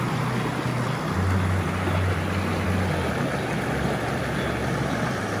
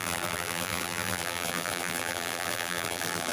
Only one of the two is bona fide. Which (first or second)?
first